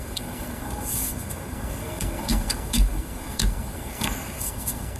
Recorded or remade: remade